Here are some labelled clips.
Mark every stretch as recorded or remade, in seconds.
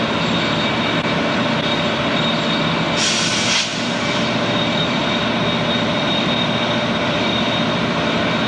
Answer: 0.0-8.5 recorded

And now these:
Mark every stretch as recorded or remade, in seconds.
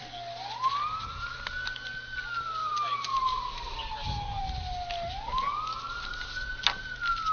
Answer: 0.0-2.6 recorded; 2.6-4.4 remade; 4.4-7.3 recorded